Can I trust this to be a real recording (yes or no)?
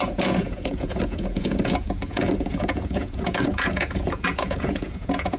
no